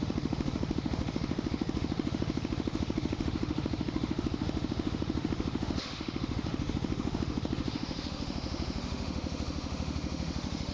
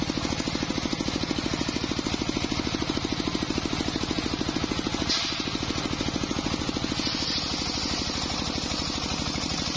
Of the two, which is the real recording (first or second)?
second